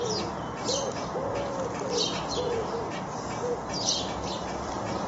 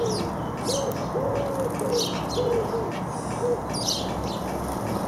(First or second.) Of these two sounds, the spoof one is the first